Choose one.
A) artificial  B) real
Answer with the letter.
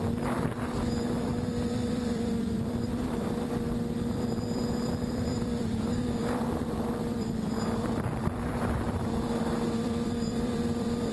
A